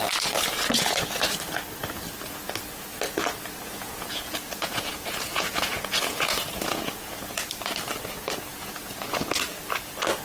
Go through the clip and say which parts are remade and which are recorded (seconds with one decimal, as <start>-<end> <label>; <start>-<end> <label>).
0.0-3.7 recorded; 3.7-7.5 remade; 7.5-8.5 recorded; 8.5-9.3 remade; 9.3-10.2 recorded